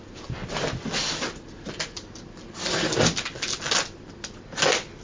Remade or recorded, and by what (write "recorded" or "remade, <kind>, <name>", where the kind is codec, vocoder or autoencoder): recorded